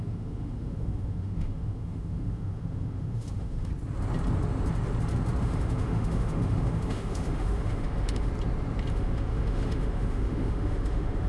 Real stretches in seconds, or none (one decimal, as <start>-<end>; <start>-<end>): 3.7-5.4; 8.3-8.9